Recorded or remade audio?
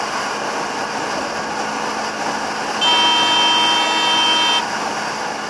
recorded